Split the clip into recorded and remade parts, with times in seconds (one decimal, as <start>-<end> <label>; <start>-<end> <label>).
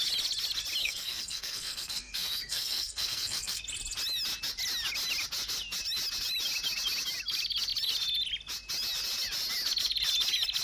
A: 0.0-0.8 recorded; 0.8-3.6 remade; 3.6-10.6 recorded